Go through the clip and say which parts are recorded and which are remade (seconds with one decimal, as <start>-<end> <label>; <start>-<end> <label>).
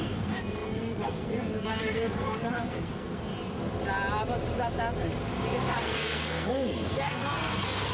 0.0-3.3 remade; 3.3-5.8 recorded; 5.8-7.9 remade